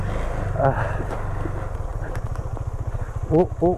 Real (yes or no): yes